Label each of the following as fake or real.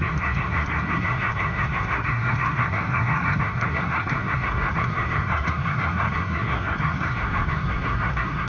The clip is fake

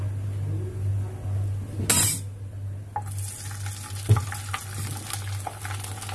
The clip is real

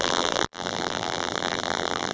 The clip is fake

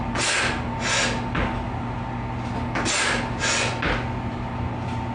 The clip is real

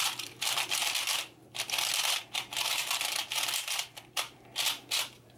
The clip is fake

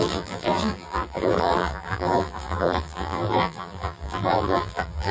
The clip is fake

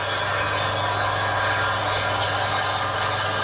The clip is real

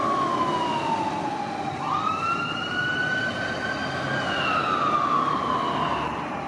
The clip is real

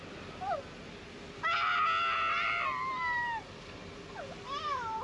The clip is real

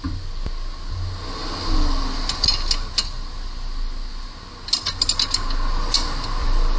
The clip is real